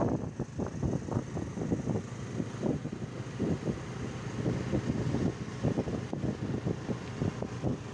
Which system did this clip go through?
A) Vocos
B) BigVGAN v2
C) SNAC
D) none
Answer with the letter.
D